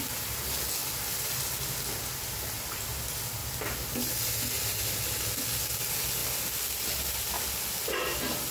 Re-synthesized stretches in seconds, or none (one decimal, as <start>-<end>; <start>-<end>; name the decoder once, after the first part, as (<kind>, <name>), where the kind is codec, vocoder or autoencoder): none